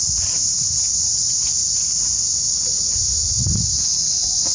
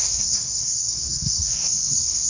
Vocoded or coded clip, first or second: second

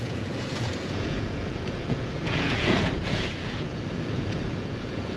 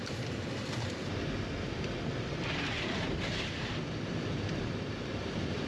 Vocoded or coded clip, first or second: first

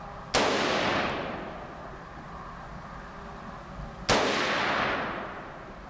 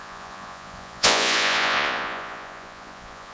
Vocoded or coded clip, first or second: second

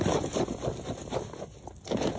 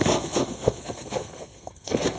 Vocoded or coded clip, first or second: second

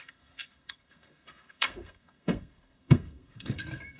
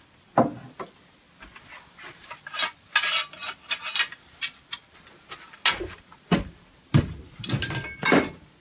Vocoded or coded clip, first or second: first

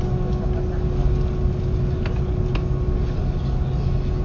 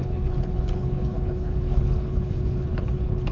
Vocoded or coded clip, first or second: second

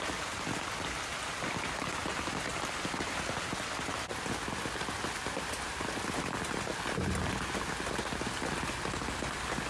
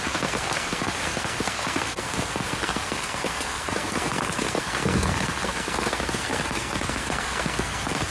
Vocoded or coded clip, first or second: second